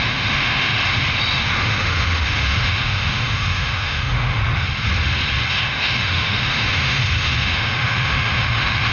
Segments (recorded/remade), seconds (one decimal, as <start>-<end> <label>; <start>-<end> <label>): 0.0-0.8 remade; 0.8-1.6 recorded; 1.6-4.4 remade; 4.4-5.5 recorded; 5.5-8.9 remade